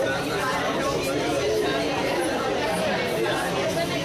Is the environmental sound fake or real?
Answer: real